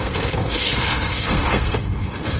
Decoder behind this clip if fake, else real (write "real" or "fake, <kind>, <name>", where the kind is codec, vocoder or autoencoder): fake, codec, SNAC